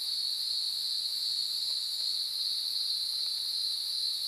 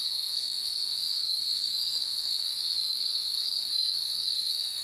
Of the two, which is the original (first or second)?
first